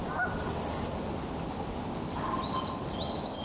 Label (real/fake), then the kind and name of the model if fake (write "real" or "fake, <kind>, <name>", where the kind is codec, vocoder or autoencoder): real